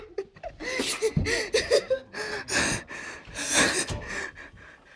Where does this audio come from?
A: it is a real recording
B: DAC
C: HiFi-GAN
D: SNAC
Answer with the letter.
A